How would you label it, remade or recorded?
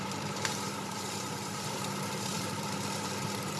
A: remade